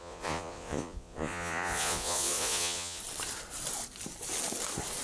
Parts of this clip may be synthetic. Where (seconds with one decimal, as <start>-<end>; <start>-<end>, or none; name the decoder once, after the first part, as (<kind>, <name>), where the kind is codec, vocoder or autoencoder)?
0.0-3.0 (vocoder, Vocos)